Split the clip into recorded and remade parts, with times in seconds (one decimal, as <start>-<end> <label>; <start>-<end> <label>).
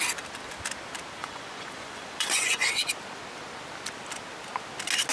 0.0-1.2 recorded; 1.2-2.9 remade; 2.9-5.1 recorded